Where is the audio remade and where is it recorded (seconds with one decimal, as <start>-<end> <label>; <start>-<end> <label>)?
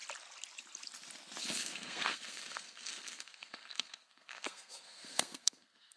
0.0-1.4 recorded; 1.4-6.0 remade